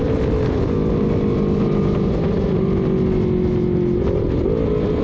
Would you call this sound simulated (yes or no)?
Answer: no